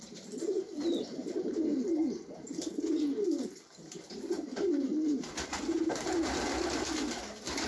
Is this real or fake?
real